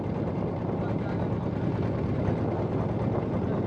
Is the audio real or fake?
real